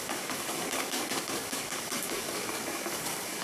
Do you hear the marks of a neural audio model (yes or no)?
yes